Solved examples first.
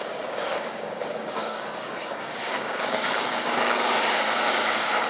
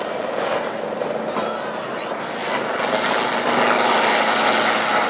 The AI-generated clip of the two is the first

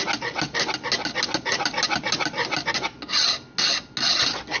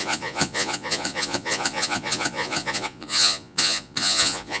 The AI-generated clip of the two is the second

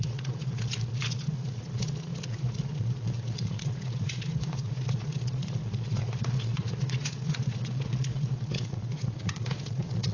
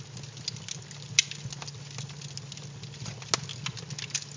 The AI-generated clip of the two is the first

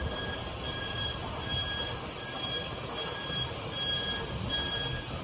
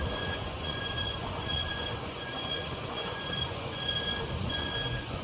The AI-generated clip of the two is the second